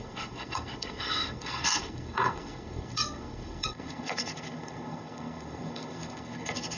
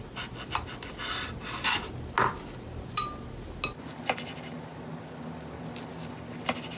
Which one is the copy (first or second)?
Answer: first